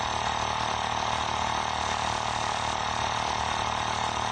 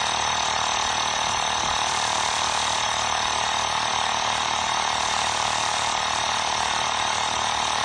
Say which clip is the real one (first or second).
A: first